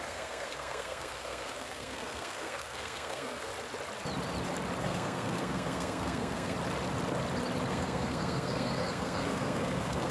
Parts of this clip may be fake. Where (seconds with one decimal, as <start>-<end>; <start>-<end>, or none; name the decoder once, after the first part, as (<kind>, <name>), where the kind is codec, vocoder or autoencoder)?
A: 0.0-3.5 (codec, SNAC); 4.8-6.6; 7.7-10.1